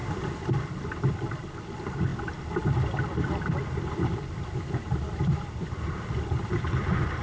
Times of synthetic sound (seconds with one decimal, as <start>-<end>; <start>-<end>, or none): 0.0-7.2